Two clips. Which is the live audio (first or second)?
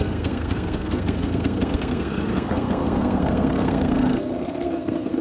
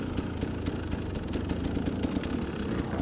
second